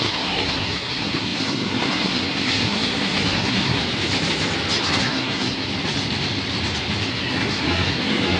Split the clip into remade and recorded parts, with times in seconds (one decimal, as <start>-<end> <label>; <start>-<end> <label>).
0.0-3.8 remade; 3.8-4.8 recorded; 4.8-5.7 remade; 5.7-7.1 recorded; 7.1-8.4 remade